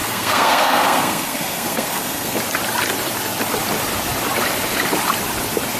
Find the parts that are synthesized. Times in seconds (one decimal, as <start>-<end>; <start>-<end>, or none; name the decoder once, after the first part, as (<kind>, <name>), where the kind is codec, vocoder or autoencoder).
0.0-2.4 (codec, SNAC)